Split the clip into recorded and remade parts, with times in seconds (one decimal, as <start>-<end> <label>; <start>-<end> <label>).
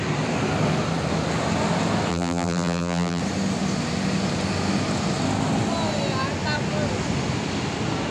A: 0.0-2.1 recorded; 2.1-3.2 remade; 3.2-8.1 recorded